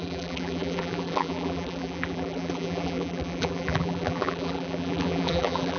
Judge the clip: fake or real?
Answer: fake